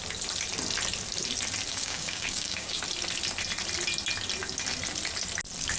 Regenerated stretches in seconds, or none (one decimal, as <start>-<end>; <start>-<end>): 1.7-2.8